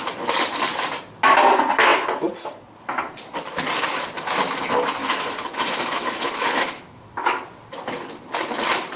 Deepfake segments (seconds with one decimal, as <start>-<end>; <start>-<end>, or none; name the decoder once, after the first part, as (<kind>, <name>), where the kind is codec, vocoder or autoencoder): 5.0-7.4 (autoencoder, DAC-VAE)